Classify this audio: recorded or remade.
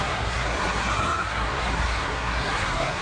remade